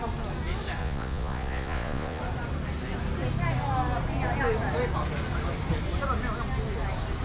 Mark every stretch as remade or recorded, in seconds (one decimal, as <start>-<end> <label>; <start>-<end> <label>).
0.0-0.8 recorded; 0.8-2.2 remade; 2.2-7.2 recorded